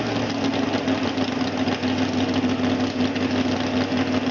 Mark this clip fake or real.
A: real